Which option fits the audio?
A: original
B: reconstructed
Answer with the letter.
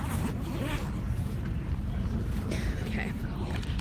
B